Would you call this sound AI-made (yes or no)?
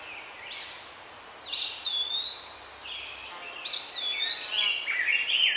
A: no